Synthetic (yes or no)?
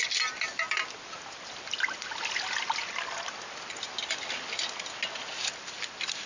no